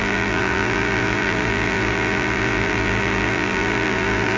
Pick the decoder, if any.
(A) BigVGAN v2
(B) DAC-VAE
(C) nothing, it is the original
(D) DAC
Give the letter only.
A